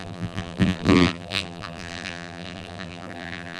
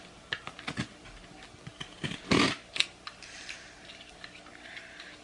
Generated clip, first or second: first